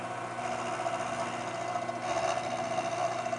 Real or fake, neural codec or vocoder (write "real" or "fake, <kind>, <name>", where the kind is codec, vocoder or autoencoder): real